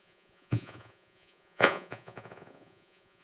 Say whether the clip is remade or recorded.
remade